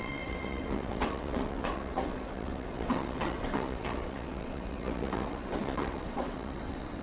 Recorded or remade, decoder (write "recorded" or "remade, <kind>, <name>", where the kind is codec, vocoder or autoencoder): remade, vocoder, WaveNeXt